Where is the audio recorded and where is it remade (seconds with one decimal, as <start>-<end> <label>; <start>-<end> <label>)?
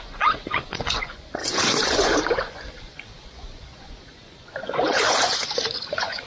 0.0-6.3 remade